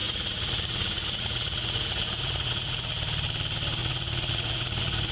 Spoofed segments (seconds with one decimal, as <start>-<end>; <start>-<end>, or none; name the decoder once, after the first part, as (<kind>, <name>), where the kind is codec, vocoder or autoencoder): 0.0-2.9 (vocoder, Vocos); 3.8-5.1